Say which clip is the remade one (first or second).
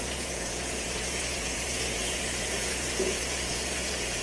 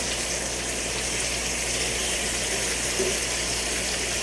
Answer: first